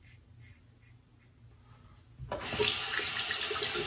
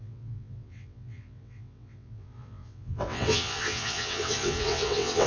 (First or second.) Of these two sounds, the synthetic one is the second